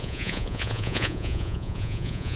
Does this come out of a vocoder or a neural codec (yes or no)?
yes